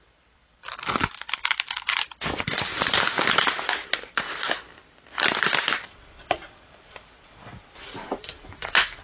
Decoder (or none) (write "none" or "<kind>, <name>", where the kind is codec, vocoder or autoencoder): vocoder, BigVGAN v2